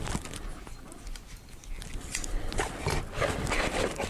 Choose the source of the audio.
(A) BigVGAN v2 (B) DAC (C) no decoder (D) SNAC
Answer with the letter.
C